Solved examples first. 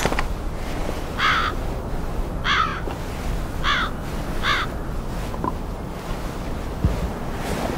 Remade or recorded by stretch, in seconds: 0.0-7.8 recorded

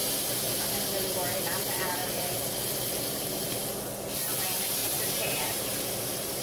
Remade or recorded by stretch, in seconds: 0.0-0.7 remade; 0.7-4.8 recorded; 4.8-5.8 remade; 5.8-6.4 recorded

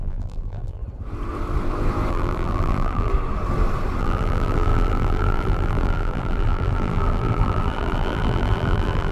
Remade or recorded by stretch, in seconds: 0.0-0.8 remade; 0.8-2.1 recorded; 2.1-3.1 remade; 3.1-4.0 recorded; 4.0-9.1 remade

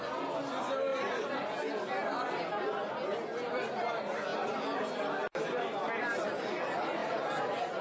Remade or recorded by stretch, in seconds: 0.0-4.3 recorded; 4.3-5.0 remade; 5.0-7.0 recorded; 7.0-7.8 remade

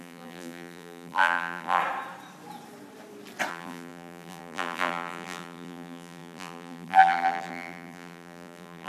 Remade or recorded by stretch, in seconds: 0.0-1.8 remade; 1.8-3.5 recorded; 3.5-8.9 remade

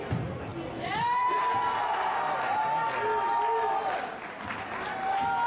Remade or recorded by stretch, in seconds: 0.0-0.5 recorded; 0.5-2.6 remade; 2.6-5.5 recorded

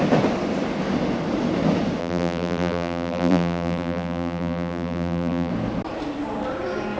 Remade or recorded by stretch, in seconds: 0.0-2.0 recorded; 2.0-5.5 remade; 5.5-7.0 recorded